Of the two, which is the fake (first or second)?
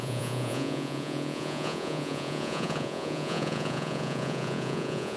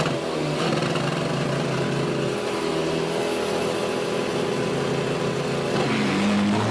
first